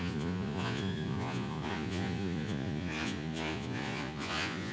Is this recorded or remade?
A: remade